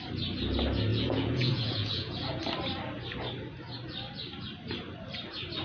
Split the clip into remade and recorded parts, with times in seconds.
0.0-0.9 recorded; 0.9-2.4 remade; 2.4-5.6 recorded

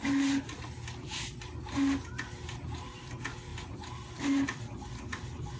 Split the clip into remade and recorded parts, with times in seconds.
0.0-5.6 recorded

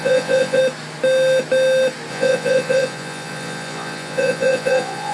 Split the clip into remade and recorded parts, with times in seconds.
0.0-0.6 remade; 0.6-2.1 recorded; 2.1-5.1 remade